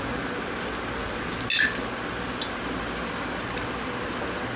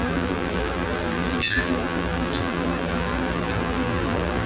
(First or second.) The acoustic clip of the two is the first